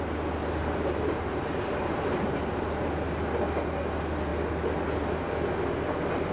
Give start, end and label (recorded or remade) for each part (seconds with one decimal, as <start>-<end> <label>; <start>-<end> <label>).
0.0-0.4 recorded; 0.4-2.9 remade; 2.9-6.3 recorded